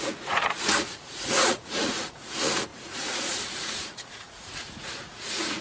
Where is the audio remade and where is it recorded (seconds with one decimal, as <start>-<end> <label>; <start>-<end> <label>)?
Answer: 0.0-5.6 remade